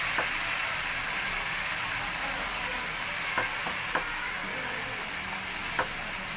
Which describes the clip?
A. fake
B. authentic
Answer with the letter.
B